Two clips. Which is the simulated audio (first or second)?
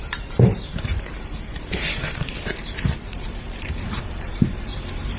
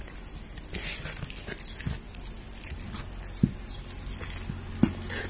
first